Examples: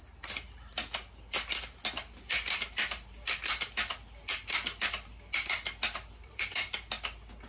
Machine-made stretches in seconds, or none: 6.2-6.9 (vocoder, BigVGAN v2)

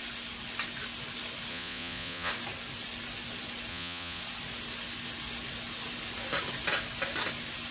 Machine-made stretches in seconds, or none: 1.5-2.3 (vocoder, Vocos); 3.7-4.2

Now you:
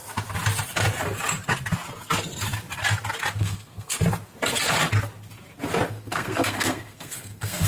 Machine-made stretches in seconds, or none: 3.4-3.9 (codec, SNAC); 5.9-7.7

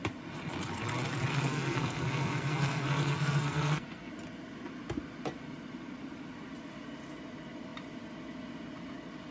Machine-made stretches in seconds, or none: 1.3-4.1 (codec, SNAC)

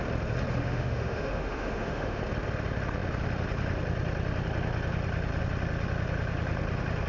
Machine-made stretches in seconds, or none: 0.6-2.2 (autoencoder, DAC-VAE)

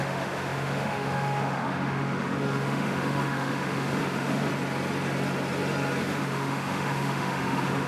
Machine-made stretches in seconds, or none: 0.0-4.5 (autoencoder, DAC-VAE); 6.0-7.9

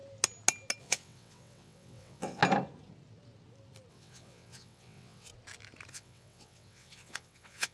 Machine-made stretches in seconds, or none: 0.8-2.4 (vocoder, WaveNeXt); 3.9-5.3; 5.9-7.7